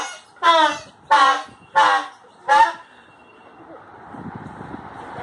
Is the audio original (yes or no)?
yes